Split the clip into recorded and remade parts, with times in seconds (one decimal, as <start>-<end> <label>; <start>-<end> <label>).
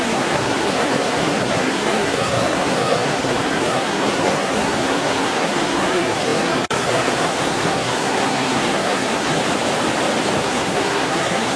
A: 0.0-9.4 remade; 9.4-10.4 recorded; 10.4-11.6 remade